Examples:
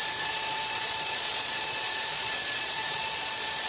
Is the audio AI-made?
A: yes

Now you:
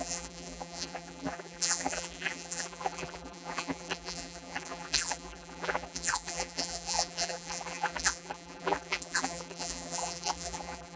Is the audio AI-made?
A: yes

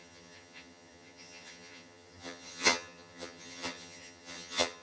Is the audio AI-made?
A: yes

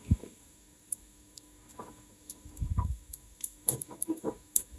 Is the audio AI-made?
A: yes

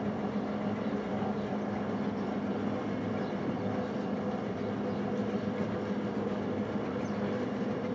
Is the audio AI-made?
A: no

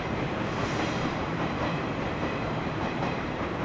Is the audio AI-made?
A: yes